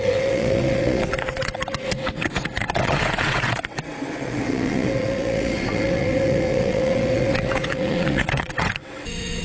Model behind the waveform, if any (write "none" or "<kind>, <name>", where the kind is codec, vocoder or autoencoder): vocoder, WaveNeXt